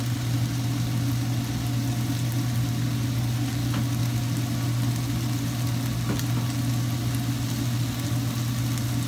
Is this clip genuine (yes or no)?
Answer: yes